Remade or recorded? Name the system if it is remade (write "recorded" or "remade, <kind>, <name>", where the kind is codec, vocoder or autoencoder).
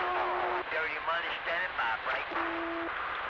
recorded